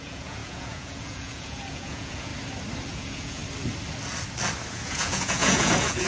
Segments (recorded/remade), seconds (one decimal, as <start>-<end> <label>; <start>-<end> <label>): 0.0-2.3 remade; 2.3-2.9 recorded; 2.9-3.4 remade; 3.4-4.7 recorded; 4.7-6.1 remade